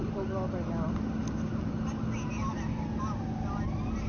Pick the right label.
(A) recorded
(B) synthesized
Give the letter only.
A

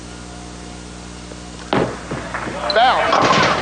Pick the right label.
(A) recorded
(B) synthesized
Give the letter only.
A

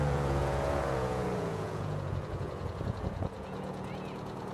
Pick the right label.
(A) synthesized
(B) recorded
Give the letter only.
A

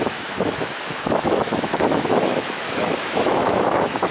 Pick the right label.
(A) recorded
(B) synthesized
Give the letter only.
B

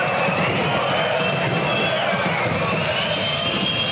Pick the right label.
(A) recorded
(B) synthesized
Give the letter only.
A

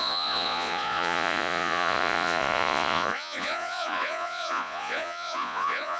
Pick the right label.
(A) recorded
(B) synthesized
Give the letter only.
B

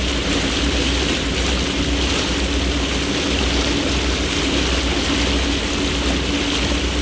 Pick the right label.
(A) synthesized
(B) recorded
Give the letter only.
B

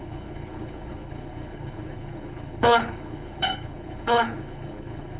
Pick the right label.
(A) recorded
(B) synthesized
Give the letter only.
B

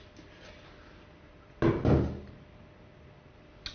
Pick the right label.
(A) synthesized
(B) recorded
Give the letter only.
B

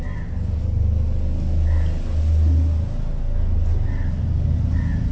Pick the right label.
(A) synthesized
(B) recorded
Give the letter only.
B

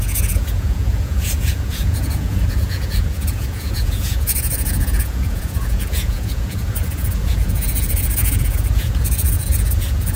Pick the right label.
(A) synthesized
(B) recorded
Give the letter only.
A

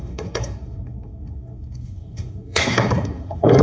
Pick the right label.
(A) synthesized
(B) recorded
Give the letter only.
A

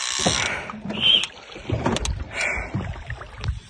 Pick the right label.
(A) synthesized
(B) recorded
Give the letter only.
B